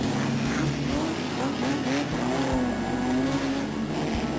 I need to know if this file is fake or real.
real